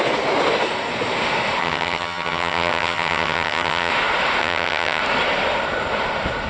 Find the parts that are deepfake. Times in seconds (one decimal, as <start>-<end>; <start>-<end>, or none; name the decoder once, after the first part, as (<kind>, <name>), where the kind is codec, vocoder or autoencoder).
1.6-3.9 (vocoder, HiFi-GAN); 4.4-5.0